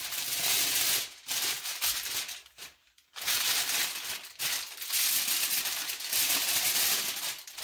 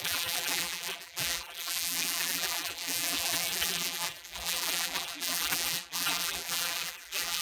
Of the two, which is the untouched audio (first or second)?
first